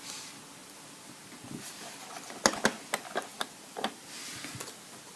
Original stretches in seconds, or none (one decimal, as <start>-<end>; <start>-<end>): 0.0-5.2